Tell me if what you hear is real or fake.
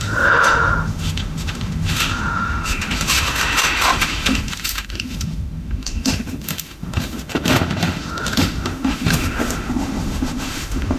fake